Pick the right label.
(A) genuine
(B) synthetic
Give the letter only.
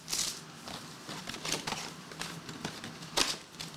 A